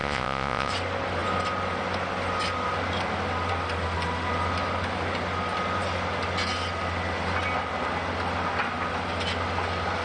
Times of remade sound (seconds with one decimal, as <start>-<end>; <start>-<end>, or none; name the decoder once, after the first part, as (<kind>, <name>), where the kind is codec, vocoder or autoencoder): 0.0-0.7 (vocoder, Vocos)